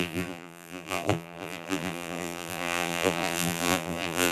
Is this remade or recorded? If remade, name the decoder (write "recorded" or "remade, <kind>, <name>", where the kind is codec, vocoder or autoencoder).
remade, vocoder, BigVGAN v2